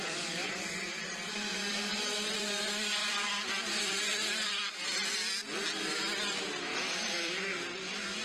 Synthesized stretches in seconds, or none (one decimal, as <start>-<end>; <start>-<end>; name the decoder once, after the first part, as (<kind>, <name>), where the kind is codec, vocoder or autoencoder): 0.0-5.2 (vocoder, BigVGAN v2); 5.9-8.2